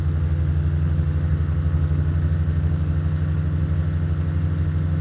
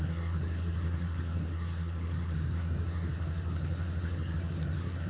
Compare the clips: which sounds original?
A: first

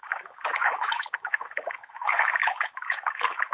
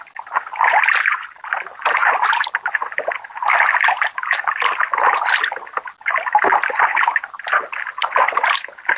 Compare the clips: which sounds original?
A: second